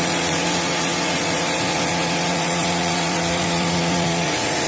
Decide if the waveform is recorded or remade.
remade